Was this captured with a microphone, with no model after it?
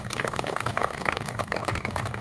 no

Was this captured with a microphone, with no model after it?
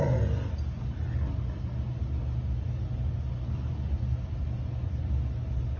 yes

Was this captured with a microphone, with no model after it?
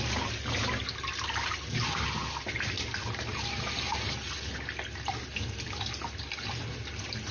yes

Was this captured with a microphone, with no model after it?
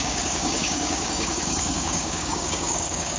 no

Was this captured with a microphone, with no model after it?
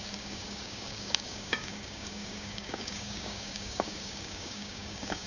no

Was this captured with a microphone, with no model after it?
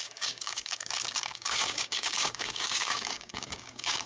no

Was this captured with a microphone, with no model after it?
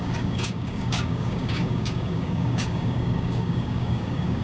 no